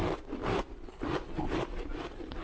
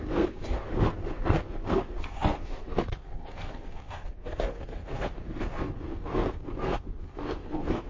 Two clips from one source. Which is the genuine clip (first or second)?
first